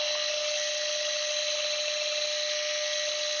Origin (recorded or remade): recorded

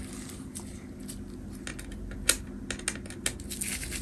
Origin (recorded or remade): recorded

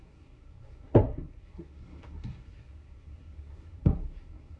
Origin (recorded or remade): remade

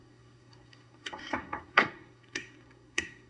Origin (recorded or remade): remade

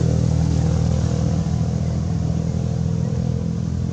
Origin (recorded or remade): recorded